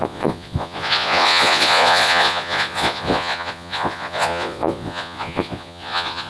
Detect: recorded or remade remade